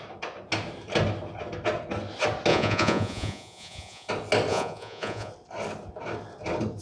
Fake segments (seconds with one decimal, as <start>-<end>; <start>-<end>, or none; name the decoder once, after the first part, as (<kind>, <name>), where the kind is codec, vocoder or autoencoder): 2.5-4.1 (vocoder, Vocos); 4.5-5.3